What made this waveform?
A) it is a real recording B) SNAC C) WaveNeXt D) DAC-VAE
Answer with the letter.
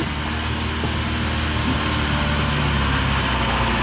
A